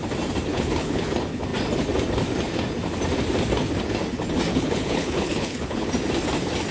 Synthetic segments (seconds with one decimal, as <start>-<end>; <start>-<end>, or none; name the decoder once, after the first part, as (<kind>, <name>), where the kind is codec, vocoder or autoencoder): 0.5-1.1 (codec, HILCodec); 4.5-5.9